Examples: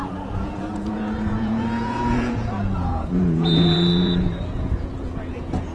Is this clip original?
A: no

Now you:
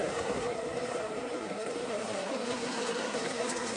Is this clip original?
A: no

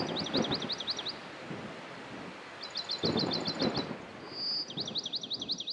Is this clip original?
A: yes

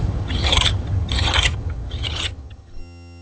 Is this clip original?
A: no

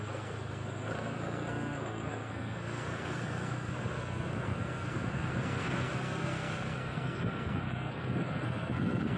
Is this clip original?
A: no